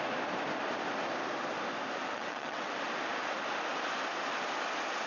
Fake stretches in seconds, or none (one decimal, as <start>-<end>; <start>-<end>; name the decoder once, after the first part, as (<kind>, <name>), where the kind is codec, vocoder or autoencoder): 2.0-2.7 (vocoder, WaveNeXt)